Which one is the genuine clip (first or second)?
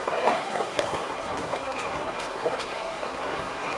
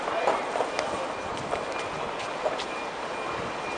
second